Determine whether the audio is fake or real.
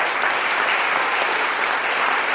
real